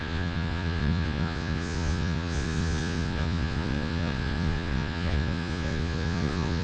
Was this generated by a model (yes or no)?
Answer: yes